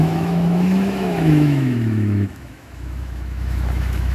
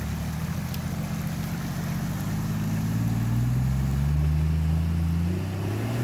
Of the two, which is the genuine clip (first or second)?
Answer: second